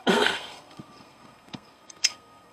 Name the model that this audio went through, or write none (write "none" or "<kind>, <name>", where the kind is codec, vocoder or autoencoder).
codec, SNAC